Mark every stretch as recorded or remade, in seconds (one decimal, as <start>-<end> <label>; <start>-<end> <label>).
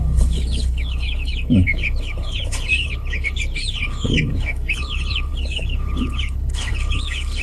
0.0-7.4 remade